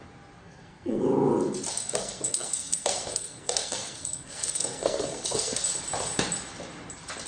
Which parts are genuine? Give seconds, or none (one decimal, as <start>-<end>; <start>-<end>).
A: 0.0-0.4; 1.0-1.7; 5.6-7.3